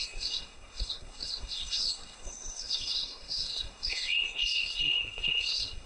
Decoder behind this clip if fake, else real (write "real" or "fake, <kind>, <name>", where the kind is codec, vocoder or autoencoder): fake, codec, SNAC